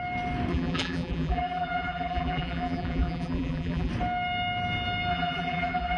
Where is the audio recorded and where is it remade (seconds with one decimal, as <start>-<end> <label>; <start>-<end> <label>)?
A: 0.0-0.5 recorded; 0.5-3.9 remade; 3.9-5.1 recorded; 5.1-6.0 remade